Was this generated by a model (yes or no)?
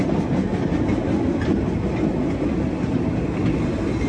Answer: no